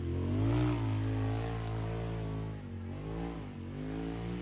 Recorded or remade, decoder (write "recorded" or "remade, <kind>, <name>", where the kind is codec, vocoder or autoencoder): recorded